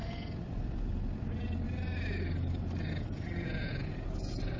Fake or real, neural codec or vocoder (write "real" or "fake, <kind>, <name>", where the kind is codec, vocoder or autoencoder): real